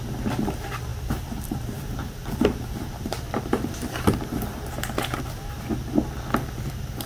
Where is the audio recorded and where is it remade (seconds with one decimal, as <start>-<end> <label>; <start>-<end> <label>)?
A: 0.0-0.9 recorded; 0.9-5.2 remade; 5.2-7.1 recorded